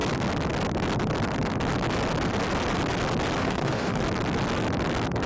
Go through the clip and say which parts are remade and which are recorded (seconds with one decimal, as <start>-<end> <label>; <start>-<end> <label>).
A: 0.0-3.4 recorded; 3.4-4.0 remade; 4.0-5.3 recorded